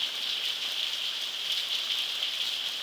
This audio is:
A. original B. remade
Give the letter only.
A